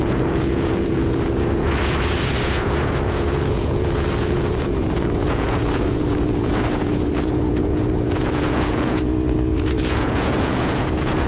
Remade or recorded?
remade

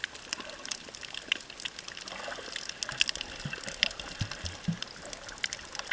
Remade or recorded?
recorded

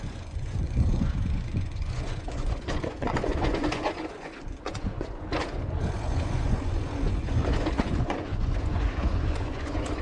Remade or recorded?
remade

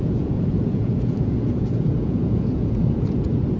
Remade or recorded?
remade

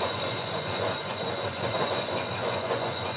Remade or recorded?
remade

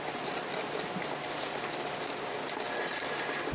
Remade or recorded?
recorded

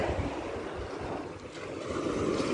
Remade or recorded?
recorded